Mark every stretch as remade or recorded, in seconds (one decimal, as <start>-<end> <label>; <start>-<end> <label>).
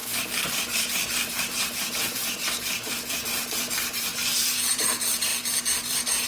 0.0-0.8 recorded; 0.8-2.2 remade; 2.2-3.1 recorded; 3.1-6.3 remade